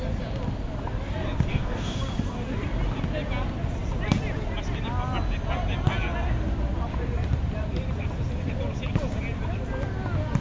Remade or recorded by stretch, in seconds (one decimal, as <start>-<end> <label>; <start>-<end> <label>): 0.0-1.5 recorded; 1.5-2.0 remade; 2.0-10.4 recorded